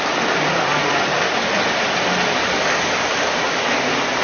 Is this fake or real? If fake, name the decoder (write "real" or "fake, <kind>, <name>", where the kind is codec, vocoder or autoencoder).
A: real